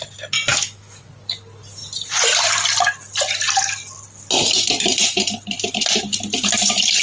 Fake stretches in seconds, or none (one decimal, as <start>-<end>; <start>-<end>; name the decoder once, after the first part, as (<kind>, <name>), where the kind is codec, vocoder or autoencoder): 0.5-1.1 (autoencoder, DAC-VAE)